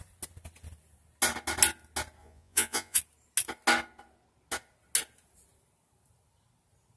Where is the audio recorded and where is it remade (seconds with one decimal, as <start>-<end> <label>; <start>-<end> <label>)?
0.0-2.2 recorded; 2.2-3.0 remade; 3.0-7.0 recorded